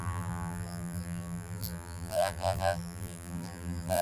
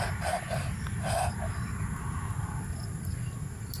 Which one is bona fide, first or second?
second